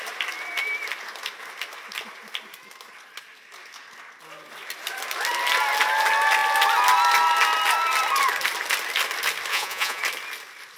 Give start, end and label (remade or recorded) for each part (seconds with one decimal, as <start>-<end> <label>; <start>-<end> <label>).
0.0-9.5 recorded; 9.5-10.0 remade; 10.0-10.8 recorded